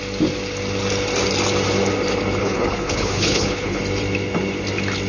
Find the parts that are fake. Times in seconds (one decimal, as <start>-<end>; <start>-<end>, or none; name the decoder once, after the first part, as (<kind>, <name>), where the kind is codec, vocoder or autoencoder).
2.4-3.8 (codec, HILCodec)

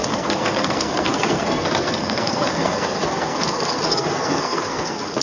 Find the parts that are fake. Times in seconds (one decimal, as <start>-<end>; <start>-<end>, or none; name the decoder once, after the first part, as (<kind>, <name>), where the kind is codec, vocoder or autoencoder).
0.0-5.2 (codec, SNAC)